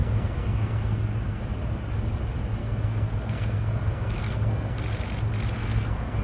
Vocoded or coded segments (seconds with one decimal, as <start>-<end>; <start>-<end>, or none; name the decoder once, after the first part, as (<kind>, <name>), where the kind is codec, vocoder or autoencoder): 0.0-1.4 (codec, SNAC); 2.6-4.8; 5.6-6.2